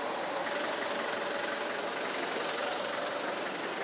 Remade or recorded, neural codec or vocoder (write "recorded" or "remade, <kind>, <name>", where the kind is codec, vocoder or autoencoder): recorded